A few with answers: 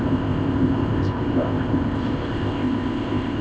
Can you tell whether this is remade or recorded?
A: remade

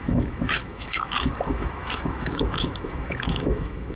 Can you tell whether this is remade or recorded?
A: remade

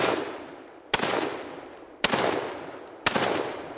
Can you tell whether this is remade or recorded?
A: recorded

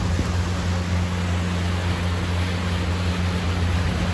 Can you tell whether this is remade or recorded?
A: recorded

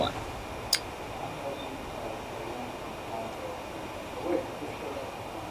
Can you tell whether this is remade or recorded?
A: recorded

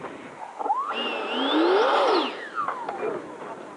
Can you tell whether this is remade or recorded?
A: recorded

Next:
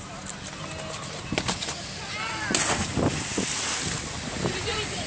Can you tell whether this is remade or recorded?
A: recorded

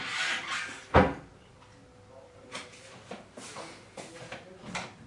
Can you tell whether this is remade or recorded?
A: recorded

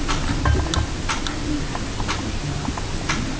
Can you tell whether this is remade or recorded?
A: recorded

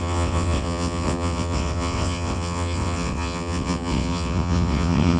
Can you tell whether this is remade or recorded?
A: remade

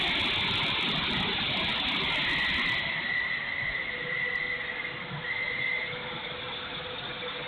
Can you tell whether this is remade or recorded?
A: recorded